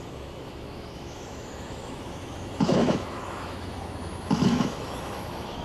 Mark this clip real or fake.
fake